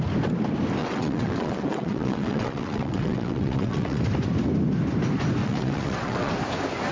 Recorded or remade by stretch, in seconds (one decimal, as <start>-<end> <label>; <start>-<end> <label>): 0.0-0.8 recorded; 0.8-4.0 remade; 4.0-5.4 recorded; 5.4-6.3 remade; 6.3-6.9 recorded